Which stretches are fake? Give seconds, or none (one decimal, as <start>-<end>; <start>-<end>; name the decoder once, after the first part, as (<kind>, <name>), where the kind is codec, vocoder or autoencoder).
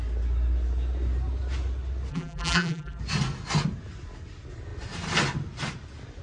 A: 2.1-3.0 (vocoder, BigVGAN v2)